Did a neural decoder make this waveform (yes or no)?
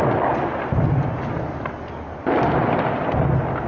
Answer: no